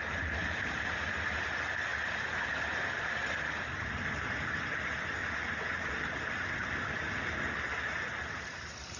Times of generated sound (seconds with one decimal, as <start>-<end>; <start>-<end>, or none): 0.4-1.5; 1.9-2.8; 5.2-6.0